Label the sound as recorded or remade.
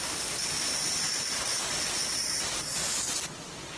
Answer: recorded